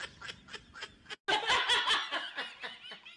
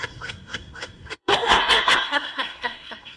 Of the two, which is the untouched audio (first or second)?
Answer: first